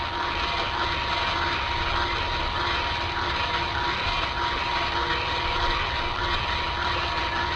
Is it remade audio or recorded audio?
recorded